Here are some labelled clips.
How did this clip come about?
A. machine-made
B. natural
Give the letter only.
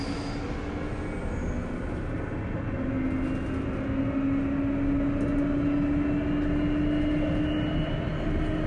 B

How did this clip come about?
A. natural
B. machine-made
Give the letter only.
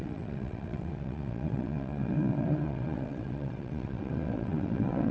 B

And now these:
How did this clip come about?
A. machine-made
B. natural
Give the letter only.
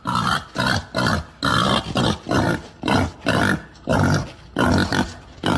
B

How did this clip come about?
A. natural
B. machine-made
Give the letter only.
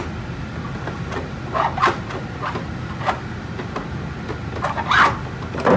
A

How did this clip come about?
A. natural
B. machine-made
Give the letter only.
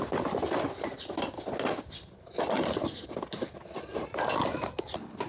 A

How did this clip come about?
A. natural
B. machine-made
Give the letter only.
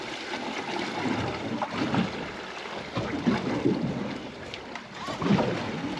A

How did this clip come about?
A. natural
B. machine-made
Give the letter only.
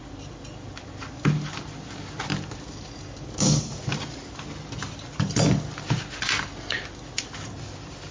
A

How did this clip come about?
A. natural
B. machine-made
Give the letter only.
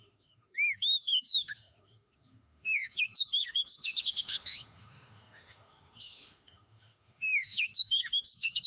B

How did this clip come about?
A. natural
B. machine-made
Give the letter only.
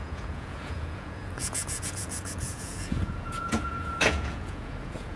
B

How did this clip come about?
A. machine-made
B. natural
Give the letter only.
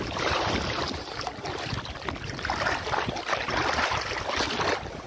A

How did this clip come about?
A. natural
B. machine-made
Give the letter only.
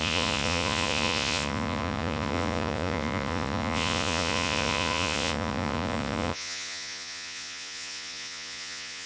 B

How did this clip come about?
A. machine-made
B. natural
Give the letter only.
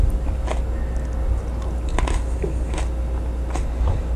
B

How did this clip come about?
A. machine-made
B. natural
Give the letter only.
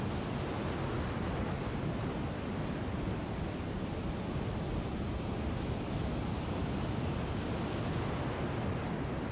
B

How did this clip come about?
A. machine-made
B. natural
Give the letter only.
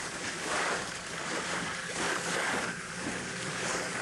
A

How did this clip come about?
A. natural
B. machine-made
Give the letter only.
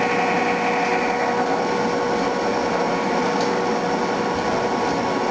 A